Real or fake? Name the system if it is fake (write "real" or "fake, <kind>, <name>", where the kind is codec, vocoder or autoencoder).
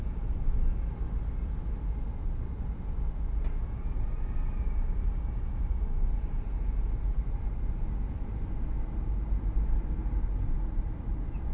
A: real